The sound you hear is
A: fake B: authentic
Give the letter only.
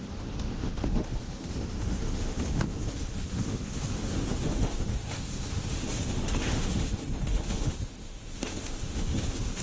A